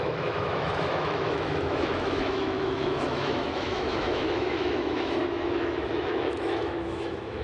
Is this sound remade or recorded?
remade